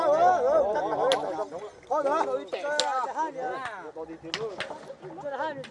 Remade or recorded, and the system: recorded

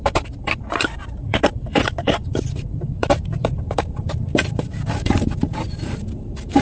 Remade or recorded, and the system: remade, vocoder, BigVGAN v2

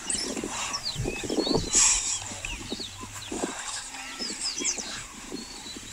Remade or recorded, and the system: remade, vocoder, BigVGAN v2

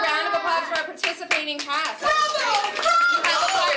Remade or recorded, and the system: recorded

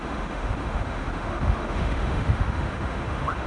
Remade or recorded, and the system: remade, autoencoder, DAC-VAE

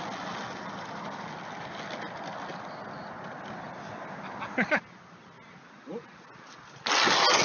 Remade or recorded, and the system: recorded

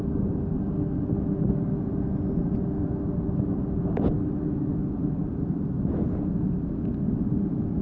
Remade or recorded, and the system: recorded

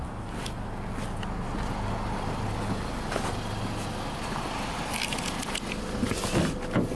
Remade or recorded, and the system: recorded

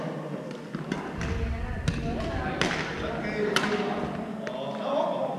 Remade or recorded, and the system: recorded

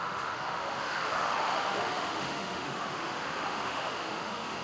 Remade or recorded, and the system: remade, autoencoder, DAC-VAE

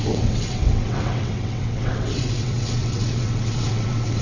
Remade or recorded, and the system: remade, vocoder, WaveNeXt